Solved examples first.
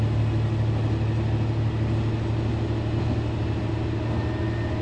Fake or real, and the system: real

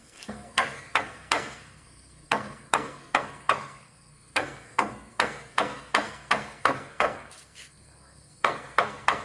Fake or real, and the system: fake, codec, SNAC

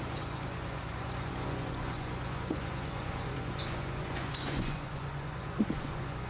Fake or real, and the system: fake, vocoder, Vocos